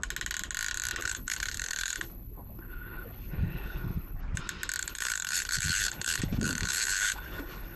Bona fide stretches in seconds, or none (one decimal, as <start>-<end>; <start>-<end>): 0.0-1.0; 4.2-4.8

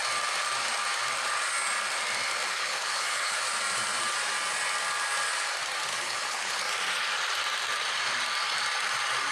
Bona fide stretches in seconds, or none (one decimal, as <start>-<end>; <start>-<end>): 0.0-2.4; 3.4-5.9; 6.6-9.3

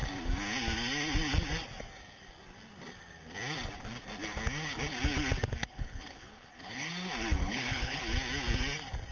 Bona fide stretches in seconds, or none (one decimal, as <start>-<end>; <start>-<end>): 0.0-5.7; 6.9-7.4; 8.0-9.1

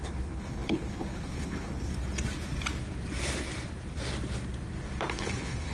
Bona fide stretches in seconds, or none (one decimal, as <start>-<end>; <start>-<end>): 1.9-5.1

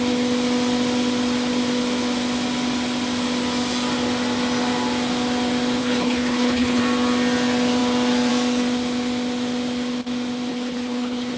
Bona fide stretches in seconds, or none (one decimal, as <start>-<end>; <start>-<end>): 0.0-5.8; 6.8-10.5

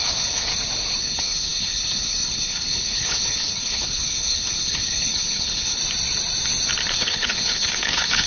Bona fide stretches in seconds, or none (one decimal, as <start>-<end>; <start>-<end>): 0.5-1.0; 5.8-6.9